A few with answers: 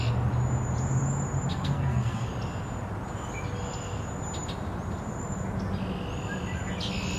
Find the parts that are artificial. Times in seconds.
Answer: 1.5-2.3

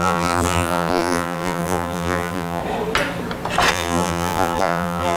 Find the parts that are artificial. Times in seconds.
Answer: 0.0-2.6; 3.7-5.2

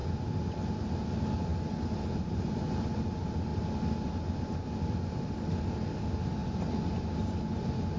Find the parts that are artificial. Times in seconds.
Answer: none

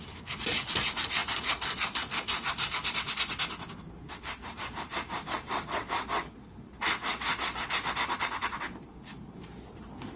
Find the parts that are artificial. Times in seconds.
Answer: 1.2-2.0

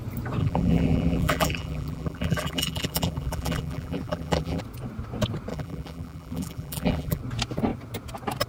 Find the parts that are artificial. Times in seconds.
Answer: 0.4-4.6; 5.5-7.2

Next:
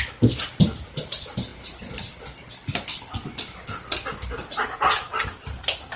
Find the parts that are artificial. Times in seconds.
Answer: none

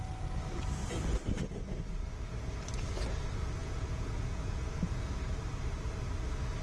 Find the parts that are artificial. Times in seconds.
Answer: 3.6-5.1

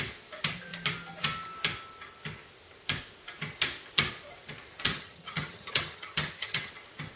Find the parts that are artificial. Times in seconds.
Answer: 4.9-6.7